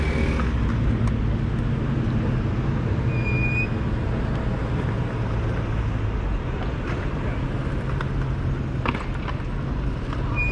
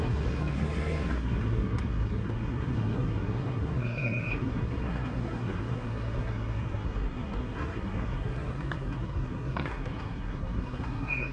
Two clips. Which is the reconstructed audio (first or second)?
second